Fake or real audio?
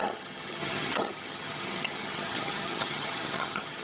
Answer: fake